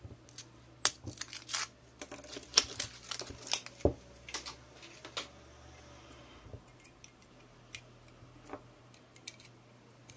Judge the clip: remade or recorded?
recorded